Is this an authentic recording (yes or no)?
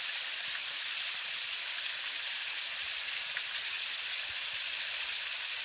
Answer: yes